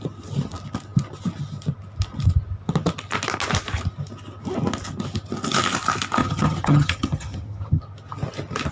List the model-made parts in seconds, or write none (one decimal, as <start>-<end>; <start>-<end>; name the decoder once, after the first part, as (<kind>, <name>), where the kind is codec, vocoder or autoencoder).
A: 6.2-7.8 (vocoder, HiFi-GAN)